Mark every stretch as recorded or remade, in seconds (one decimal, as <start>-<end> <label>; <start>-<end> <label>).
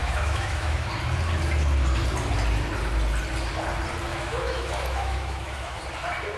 0.0-0.9 remade; 0.9-4.1 recorded; 4.1-5.8 remade; 5.8-6.4 recorded